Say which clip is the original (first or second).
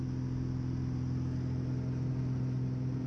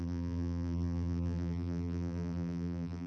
first